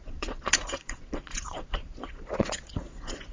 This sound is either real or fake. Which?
fake